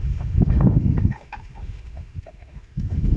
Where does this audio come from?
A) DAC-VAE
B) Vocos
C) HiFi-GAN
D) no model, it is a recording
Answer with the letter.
A